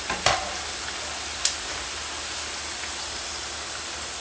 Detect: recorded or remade recorded